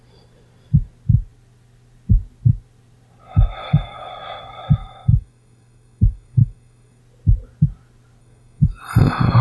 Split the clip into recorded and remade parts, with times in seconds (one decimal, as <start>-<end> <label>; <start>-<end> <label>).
0.0-3.6 recorded; 3.6-4.1 remade; 4.1-4.8 recorded; 4.8-7.0 remade; 7.0-8.2 recorded; 8.2-8.8 remade; 8.8-9.4 recorded